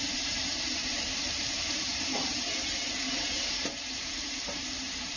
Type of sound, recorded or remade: remade